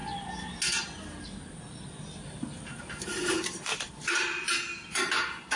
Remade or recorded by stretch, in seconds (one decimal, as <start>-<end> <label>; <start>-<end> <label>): 0.0-2.8 recorded; 2.8-5.6 remade